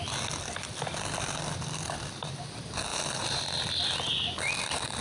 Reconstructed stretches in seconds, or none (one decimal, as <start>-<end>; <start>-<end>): 2.9-3.4